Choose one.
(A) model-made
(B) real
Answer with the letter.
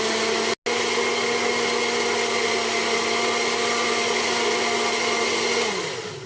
B